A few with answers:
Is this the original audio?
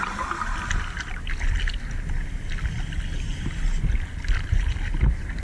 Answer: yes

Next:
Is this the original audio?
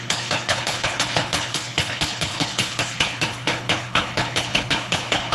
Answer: no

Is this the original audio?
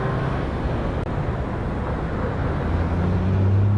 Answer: yes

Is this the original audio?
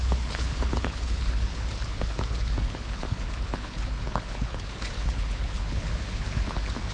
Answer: no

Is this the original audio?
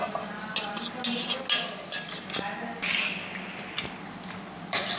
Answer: yes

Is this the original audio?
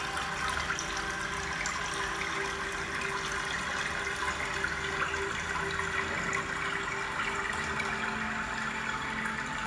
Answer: yes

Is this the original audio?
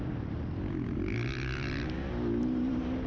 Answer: yes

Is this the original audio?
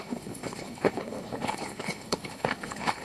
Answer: no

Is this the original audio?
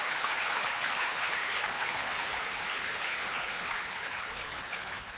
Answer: no